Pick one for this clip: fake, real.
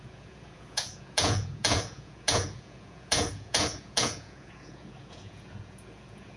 fake